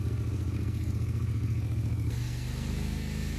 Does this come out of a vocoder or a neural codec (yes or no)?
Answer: yes